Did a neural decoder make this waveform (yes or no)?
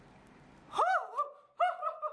no